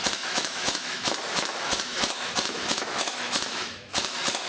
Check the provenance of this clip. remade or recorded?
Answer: remade